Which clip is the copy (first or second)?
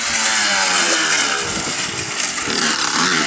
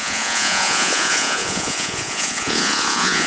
second